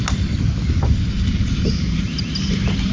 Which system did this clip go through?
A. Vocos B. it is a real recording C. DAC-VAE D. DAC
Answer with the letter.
B